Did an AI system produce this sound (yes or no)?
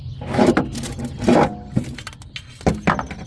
no